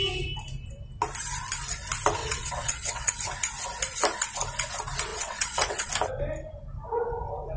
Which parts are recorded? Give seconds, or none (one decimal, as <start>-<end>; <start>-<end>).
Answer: 0.0-2.2; 3.1-5.1; 5.9-7.6